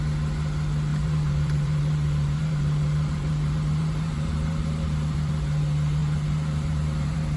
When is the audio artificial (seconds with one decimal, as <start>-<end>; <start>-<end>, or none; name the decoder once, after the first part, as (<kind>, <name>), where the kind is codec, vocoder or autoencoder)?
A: 0.9-5.3 (vocoder, BigVGAN v2); 6.0-7.4